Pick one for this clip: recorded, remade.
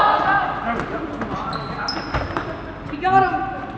recorded